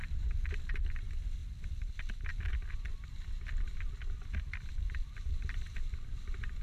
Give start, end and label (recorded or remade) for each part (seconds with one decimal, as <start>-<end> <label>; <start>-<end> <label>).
0.0-6.6 remade